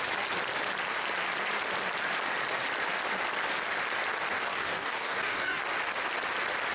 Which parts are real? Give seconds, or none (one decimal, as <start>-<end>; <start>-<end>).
0.0-4.5; 5.6-6.7